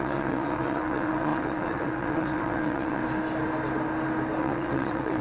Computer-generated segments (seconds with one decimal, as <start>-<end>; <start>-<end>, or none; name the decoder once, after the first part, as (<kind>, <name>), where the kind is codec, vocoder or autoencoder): 0.0-3.0 (vocoder, WaveNeXt); 4.4-5.2